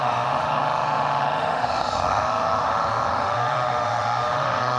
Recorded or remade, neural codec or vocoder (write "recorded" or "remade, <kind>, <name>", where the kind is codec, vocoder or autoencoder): remade, autoencoder, DAC-VAE